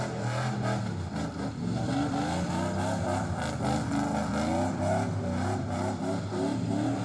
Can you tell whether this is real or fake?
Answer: real